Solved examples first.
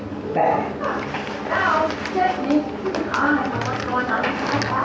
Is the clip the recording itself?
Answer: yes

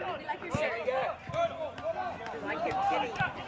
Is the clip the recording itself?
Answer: yes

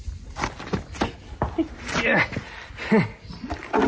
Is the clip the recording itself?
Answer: yes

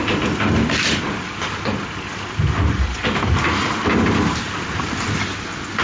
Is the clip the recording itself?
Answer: yes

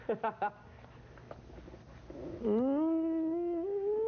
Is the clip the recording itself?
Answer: yes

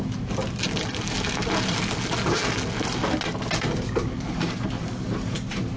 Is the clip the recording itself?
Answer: yes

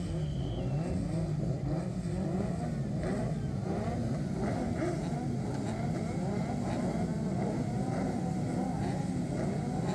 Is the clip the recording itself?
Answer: yes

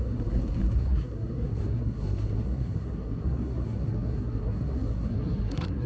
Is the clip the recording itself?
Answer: no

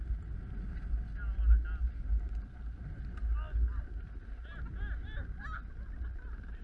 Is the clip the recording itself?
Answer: yes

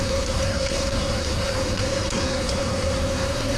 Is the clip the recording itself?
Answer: no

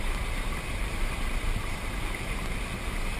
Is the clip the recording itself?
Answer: yes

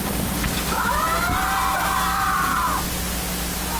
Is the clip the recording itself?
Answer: yes